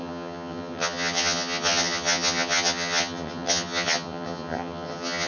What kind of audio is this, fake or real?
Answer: fake